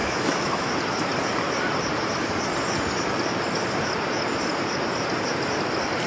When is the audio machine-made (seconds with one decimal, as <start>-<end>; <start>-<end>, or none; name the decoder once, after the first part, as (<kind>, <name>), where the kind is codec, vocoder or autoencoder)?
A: 0.0-0.7 (autoencoder, DAC-VAE)